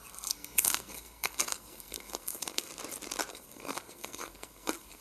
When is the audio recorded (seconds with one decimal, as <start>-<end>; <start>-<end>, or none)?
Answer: 2.7-3.3